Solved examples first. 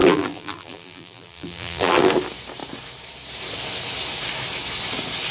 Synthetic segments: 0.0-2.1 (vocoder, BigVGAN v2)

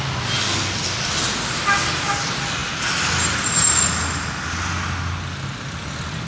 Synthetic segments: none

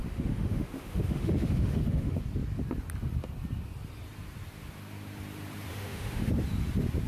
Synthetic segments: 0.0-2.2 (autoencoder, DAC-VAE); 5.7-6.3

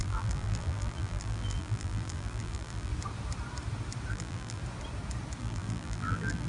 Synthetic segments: 0.0-2.9 (vocoder, BigVGAN v2); 4.1-4.6; 5.4-6.5

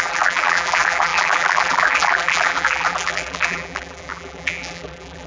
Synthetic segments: 0.0-5.3 (vocoder, BigVGAN v2)